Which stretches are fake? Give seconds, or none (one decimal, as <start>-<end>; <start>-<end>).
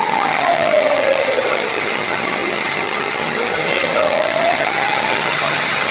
0.0-5.9